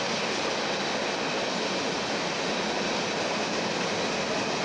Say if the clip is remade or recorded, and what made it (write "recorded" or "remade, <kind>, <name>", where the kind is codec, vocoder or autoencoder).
recorded